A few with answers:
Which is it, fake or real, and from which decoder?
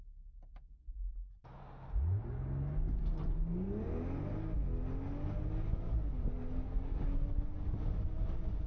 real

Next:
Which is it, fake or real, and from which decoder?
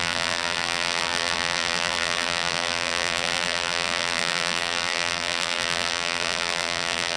fake, vocoder, BigVGAN v2